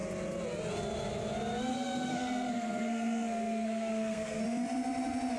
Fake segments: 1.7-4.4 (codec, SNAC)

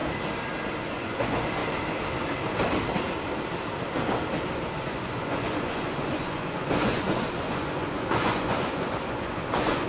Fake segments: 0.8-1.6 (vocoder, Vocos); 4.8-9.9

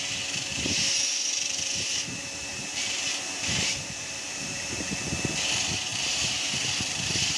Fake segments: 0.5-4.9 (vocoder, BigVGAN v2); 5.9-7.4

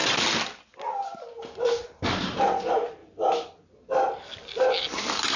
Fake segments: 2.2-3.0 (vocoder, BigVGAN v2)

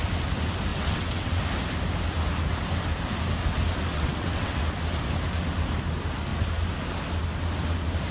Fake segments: 0.7-1.4 (vocoder, WaveNeXt); 3.9-4.6

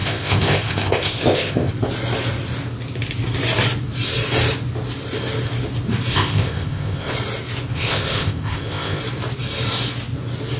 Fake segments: 0.0-1.7 (codec, ZipCodec); 6.1-7.1; 7.7-9.0

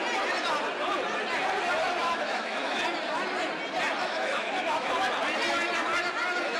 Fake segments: 2.0-2.8 (autoencoder, DAC-VAE); 4.0-4.9

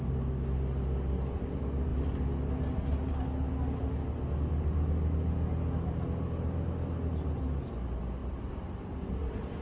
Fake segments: none